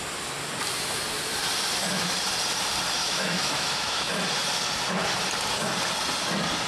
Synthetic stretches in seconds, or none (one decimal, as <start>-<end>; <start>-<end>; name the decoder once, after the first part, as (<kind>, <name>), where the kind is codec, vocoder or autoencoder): 3.0-4.1 (autoencoder, DAC-VAE)